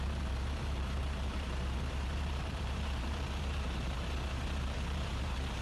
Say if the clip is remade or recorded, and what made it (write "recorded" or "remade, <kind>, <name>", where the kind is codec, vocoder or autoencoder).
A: remade, vocoder, BigVGAN v2